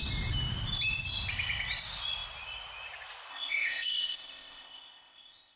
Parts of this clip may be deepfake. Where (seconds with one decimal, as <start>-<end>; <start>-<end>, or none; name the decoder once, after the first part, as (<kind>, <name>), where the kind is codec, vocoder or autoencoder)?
3.3-5.6 (codec, ZipCodec)